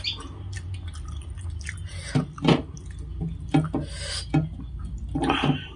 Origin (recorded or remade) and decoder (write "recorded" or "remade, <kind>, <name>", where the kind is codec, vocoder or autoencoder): recorded